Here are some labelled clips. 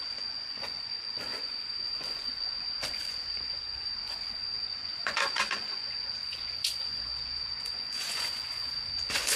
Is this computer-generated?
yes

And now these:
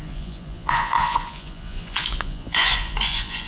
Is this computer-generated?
yes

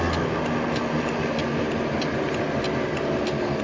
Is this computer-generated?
no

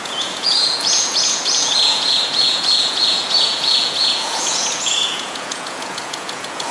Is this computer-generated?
yes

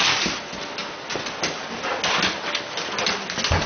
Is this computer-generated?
no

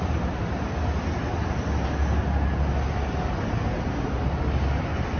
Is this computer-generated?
no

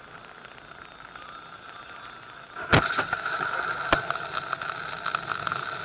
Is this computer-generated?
no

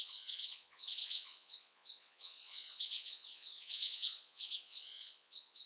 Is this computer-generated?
yes